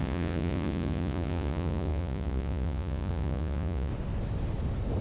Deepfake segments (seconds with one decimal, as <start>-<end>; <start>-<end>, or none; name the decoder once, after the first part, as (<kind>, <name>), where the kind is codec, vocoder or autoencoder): 0.0-3.9 (vocoder, Vocos)